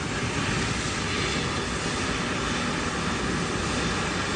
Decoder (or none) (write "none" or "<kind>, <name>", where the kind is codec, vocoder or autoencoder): none